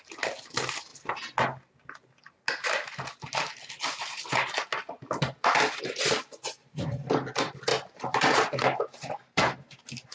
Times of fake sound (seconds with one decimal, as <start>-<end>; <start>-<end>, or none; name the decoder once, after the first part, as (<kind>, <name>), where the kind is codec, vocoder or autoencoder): 6.6-7.1 (vocoder, BigVGAN v2); 7.7-9.4

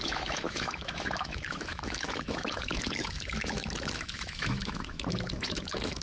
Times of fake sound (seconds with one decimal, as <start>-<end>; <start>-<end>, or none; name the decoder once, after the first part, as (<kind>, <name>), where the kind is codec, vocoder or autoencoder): 0.0-6.0 (autoencoder, DAC-VAE)

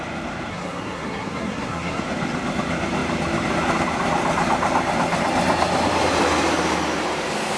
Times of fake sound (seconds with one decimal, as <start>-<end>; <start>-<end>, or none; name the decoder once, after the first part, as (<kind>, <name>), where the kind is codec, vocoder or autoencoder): 0.5-2.0 (codec, SNAC)

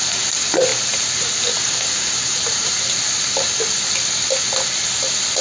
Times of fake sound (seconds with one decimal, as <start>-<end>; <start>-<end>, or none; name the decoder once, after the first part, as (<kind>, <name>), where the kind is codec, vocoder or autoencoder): none

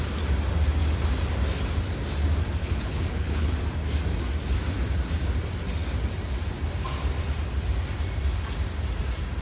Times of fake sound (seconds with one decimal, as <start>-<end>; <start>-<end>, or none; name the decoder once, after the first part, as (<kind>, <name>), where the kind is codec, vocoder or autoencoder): 2.6-3.5 (codec, HILCodec)

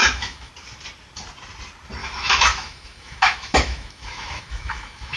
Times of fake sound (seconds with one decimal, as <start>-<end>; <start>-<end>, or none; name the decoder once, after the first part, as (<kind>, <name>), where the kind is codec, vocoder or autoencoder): 0.0-0.5 (autoencoder, DAC-VAE); 2.0-5.2